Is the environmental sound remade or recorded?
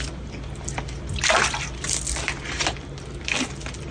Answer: remade